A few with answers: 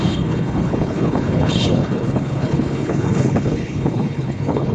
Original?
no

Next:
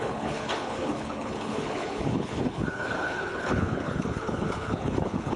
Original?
no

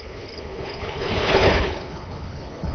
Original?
no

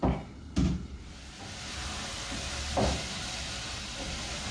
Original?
yes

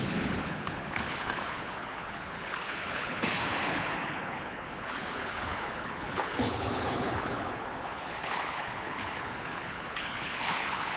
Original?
no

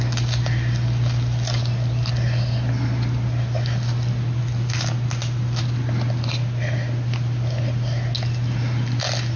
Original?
yes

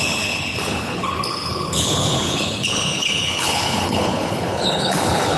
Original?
no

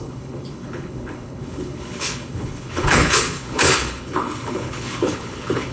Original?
no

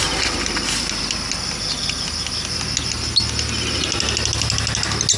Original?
yes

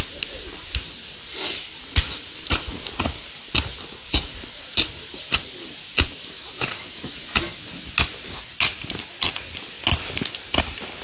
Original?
yes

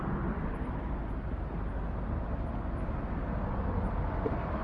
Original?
yes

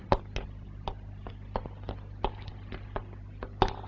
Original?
yes